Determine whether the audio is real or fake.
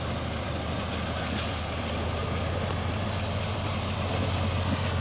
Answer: real